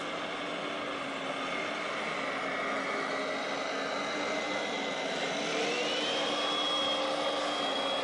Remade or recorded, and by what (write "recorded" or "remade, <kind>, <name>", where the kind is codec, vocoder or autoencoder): recorded